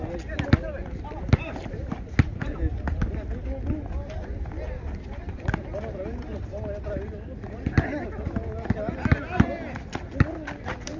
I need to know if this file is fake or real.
real